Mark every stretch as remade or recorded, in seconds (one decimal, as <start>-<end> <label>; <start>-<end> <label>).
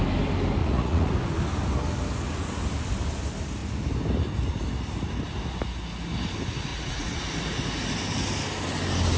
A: 0.0-0.6 recorded; 0.6-1.1 remade; 1.1-6.7 recorded; 6.7-7.2 remade; 7.2-9.2 recorded